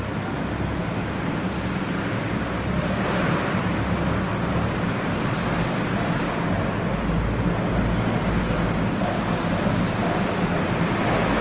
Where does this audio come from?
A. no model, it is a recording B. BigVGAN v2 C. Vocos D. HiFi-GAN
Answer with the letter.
A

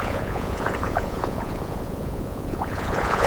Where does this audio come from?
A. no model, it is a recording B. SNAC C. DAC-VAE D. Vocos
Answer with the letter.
D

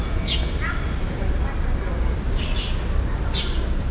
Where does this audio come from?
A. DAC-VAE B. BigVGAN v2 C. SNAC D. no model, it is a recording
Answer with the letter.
D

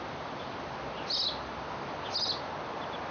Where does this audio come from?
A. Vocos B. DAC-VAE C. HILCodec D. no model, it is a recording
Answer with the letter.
D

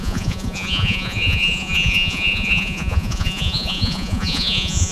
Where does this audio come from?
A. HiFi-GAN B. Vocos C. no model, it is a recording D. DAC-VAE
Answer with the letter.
B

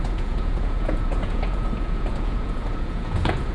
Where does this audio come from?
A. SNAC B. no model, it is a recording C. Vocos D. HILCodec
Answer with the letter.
C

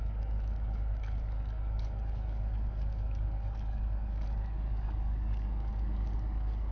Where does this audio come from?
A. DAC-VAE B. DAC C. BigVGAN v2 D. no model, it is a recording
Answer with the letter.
B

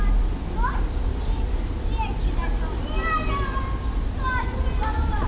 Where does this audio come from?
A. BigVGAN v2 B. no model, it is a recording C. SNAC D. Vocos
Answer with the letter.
B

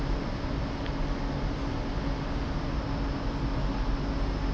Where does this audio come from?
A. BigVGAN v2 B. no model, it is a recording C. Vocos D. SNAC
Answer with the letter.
B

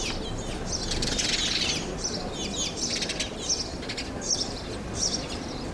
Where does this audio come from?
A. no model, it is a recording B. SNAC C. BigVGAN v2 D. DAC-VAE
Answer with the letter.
A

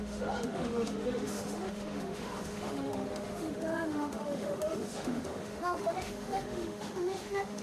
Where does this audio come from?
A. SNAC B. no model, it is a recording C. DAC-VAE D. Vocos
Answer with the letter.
C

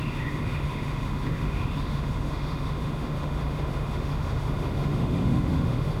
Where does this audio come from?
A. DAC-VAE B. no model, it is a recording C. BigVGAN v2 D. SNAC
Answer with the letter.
A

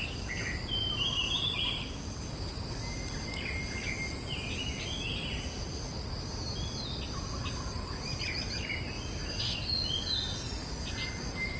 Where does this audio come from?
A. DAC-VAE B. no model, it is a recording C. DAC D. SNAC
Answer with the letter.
B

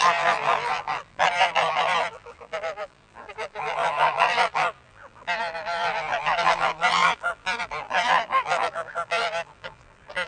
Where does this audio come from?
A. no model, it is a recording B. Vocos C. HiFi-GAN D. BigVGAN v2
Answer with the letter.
D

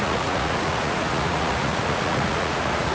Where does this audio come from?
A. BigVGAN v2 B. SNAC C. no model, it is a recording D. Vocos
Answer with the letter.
D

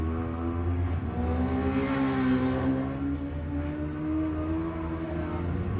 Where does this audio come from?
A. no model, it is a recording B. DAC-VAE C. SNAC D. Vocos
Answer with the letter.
A